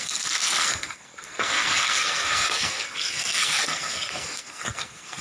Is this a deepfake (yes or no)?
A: yes